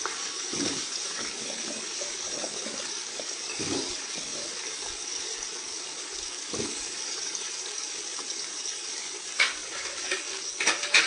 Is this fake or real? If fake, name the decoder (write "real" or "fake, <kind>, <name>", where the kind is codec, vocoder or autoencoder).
fake, codec, DAC